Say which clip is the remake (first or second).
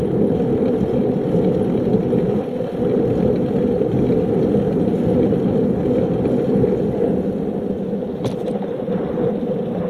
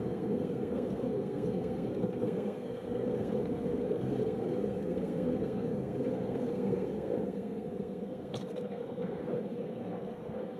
second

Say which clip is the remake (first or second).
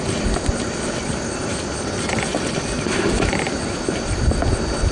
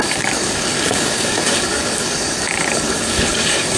second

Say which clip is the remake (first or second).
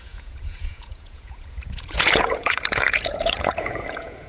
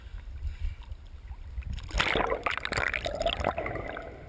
first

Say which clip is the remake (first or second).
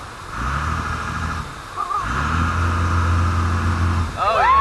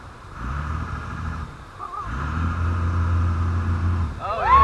second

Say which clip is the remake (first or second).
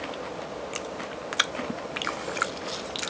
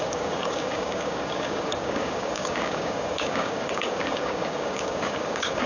second